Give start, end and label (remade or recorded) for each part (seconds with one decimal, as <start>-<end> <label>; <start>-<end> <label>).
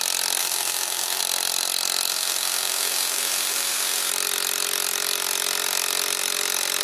0.0-0.4 recorded; 0.4-1.2 remade; 1.2-2.1 recorded; 2.1-4.1 remade; 4.1-6.8 recorded